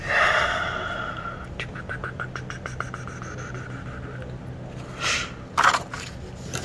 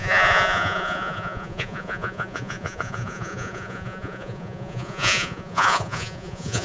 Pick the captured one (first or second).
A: first